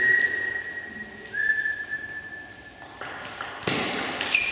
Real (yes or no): yes